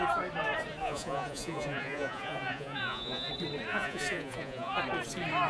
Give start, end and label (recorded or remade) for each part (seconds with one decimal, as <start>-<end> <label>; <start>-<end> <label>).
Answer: 0.0-0.8 recorded; 0.8-3.3 remade; 3.3-3.7 recorded; 3.7-4.8 remade; 4.8-5.5 recorded